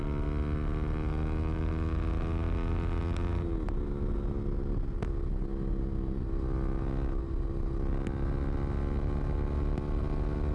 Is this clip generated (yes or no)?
no